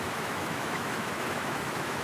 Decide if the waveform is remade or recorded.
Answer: remade